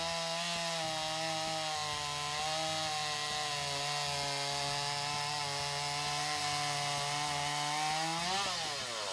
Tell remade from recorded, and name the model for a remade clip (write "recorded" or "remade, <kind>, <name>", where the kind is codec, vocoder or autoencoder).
recorded